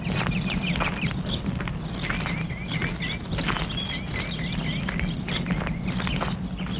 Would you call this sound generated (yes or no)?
no